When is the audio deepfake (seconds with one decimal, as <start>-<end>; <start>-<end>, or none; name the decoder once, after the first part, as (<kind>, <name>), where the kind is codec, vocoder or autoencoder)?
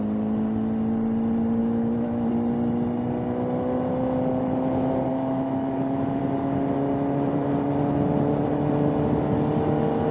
1.6-2.3 (autoencoder, DAC-VAE); 5.1-6.2